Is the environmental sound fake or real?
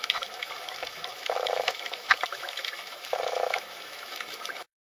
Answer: fake